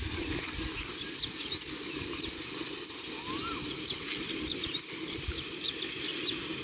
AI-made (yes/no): no